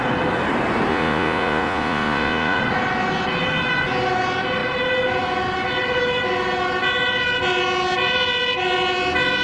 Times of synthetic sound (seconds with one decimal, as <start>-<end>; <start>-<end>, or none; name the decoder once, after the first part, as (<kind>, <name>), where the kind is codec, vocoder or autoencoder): 0.9-2.6 (vocoder, Vocos)